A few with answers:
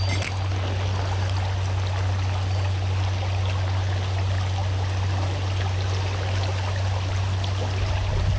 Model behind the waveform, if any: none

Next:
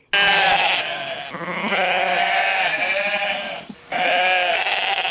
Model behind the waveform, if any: none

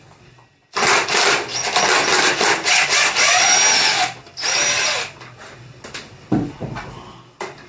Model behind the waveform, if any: none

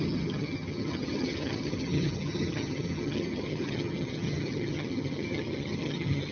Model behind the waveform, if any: vocoder, HiFi-GAN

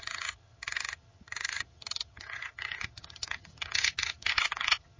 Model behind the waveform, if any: vocoder, HiFi-GAN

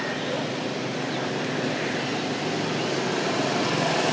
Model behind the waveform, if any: none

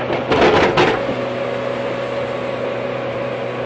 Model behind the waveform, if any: none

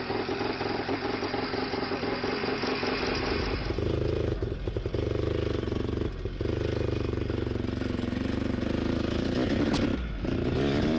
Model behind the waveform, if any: none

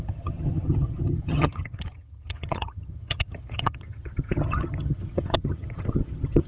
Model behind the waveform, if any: vocoder, HiFi-GAN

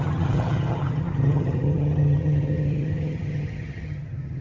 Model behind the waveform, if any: vocoder, HiFi-GAN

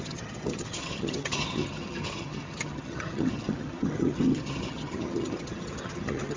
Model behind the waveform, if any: vocoder, HiFi-GAN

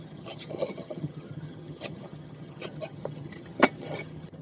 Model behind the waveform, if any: vocoder, HiFi-GAN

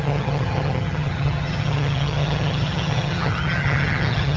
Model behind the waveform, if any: vocoder, HiFi-GAN